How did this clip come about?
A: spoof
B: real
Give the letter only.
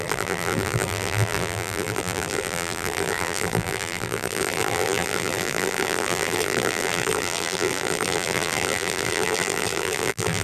A